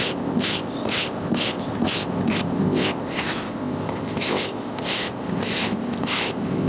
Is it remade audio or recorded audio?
remade